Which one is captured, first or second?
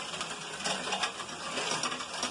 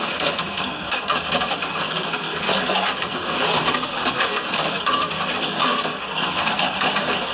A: first